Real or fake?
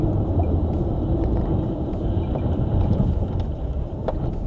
fake